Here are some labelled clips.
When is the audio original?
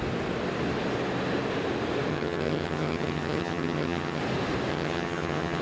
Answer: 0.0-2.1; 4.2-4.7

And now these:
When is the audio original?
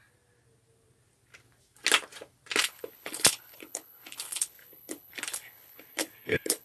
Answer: 0.0-2.6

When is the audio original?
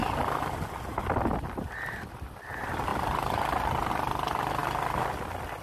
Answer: 0.0-5.6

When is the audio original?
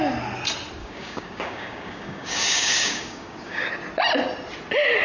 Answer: 0.0-0.8; 3.7-5.0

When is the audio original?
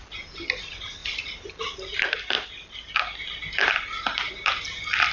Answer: 0.0-5.1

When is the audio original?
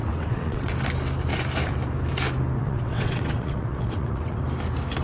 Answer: 0.7-2.6; 4.4-5.0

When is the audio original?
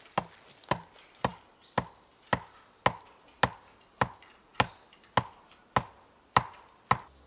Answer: 0.0-7.3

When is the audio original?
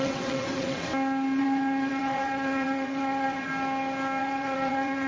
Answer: 0.9-1.4; 3.5-4.2